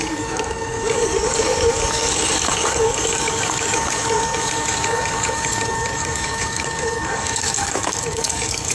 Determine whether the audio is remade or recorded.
remade